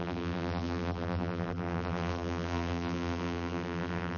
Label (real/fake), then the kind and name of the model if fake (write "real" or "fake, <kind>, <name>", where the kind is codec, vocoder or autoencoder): fake, vocoder, BigVGAN v2